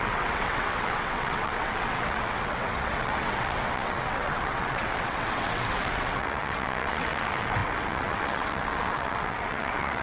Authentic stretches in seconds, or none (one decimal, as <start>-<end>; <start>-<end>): none